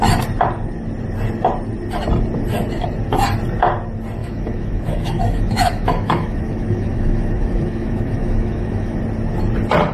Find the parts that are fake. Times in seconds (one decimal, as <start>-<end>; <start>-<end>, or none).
4.2-9.0